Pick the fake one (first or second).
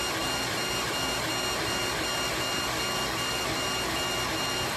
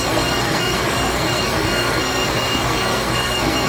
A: second